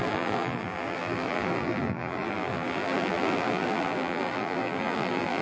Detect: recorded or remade remade